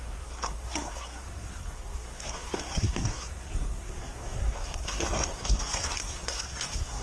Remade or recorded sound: remade